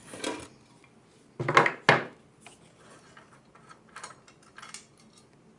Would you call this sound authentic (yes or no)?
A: yes